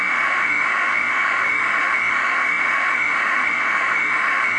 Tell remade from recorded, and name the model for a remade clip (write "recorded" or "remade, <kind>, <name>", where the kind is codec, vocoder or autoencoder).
remade, autoencoder, DAC-VAE